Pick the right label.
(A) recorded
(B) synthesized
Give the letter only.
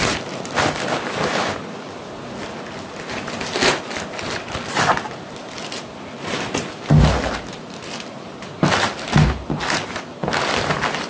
A